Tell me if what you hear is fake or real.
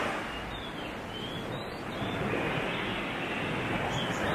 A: real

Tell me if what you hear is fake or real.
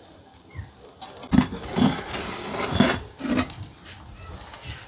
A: real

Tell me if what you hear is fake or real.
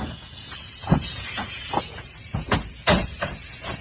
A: fake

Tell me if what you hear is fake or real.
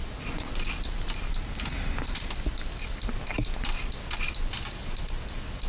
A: real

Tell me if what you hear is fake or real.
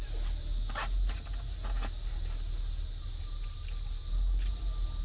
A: real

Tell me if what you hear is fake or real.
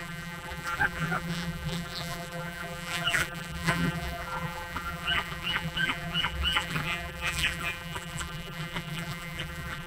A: fake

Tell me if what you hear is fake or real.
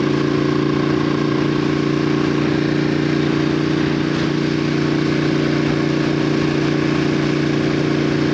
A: real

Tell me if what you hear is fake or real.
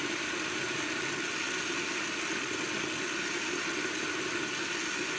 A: real